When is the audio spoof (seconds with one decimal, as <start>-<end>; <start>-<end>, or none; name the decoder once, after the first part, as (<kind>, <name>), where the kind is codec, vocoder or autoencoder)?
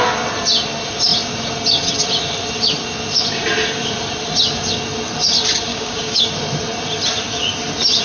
5.7-6.3 (codec, DAC)